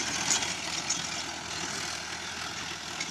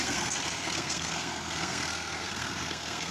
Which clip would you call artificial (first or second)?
second